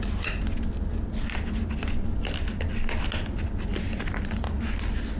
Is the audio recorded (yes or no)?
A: yes